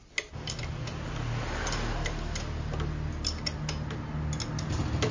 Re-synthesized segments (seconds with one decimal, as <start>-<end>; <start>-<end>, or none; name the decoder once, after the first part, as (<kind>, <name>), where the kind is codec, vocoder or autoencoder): none

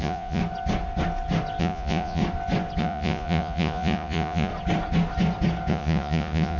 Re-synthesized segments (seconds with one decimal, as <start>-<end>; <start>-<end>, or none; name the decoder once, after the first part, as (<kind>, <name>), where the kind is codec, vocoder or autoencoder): 0.0-0.4 (vocoder, Vocos); 1.6-2.2; 2.8-4.5; 5.7-6.6

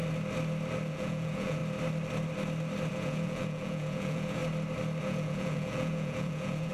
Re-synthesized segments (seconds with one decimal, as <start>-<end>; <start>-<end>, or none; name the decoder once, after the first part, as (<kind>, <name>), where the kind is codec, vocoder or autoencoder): 0.9-1.6 (vocoder, Vocos); 2.9-4.4; 5.0-6.7

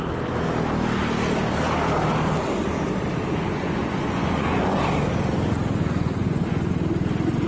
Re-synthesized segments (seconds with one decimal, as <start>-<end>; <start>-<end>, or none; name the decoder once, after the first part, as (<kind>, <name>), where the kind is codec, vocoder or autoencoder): 3.5-4.8 (vocoder, Vocos); 5.8-6.7

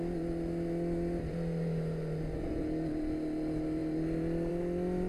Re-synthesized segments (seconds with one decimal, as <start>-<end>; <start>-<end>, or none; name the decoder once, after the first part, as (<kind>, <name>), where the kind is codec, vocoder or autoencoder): none

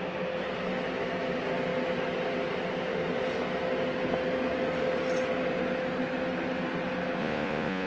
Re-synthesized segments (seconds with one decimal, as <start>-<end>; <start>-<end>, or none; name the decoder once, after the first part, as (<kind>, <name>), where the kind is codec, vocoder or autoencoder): 7.2-7.9 (vocoder, Vocos)